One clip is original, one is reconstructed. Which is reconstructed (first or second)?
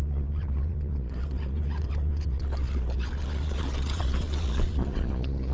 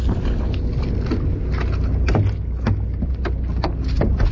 first